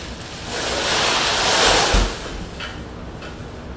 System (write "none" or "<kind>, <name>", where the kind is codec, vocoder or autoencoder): none